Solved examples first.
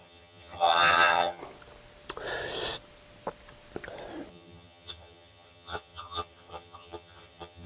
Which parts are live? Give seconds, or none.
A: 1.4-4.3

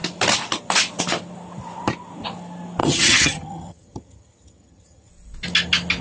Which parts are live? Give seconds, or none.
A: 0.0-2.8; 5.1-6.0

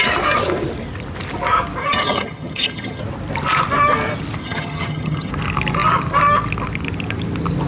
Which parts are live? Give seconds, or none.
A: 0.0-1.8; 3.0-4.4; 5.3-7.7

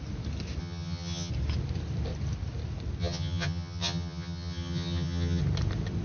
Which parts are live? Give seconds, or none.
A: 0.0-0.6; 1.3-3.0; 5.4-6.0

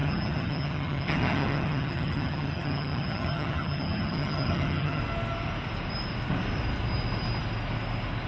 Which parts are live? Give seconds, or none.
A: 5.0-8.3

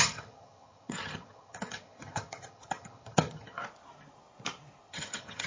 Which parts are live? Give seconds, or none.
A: 3.6-4.9